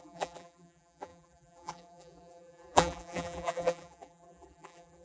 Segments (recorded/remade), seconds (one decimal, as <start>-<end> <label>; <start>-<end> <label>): 0.0-5.0 remade